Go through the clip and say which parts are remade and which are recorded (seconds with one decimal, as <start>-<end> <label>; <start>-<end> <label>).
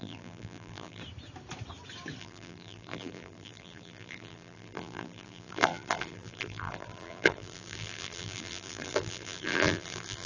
0.0-1.0 remade; 1.0-2.2 recorded; 2.2-10.3 remade